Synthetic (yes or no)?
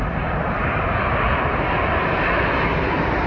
no